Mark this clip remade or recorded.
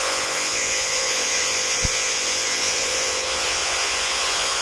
remade